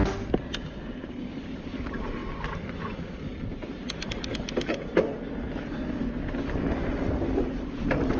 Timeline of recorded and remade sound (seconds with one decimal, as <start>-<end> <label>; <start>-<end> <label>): 0.0-8.2 recorded